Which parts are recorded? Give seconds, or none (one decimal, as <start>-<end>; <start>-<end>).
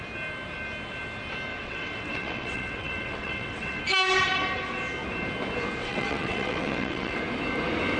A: 0.0-1.5; 3.8-5.8; 7.2-8.0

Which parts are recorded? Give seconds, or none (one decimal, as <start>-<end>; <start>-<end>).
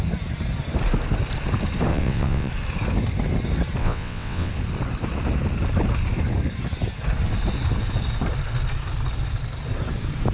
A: 0.0-1.9; 2.5-3.8; 4.5-10.3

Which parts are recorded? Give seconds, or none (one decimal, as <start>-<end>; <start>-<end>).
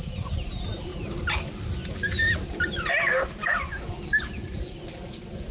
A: 0.0-5.5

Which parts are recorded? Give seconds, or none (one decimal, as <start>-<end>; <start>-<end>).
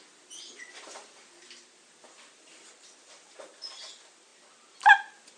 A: 0.0-5.4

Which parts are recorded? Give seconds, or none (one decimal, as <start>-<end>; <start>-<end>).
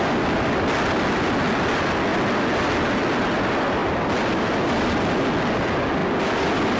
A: 0.0-6.8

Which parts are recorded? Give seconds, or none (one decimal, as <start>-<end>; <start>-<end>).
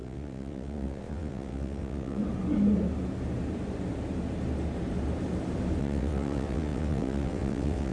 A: 2.2-5.8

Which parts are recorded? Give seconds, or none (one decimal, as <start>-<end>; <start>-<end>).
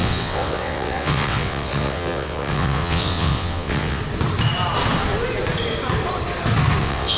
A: 4.0-6.8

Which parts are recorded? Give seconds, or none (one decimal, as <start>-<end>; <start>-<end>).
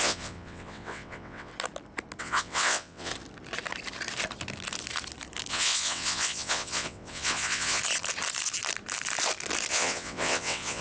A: 1.5-2.2; 3.1-5.5; 7.8-9.7